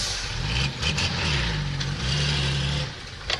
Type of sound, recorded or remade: remade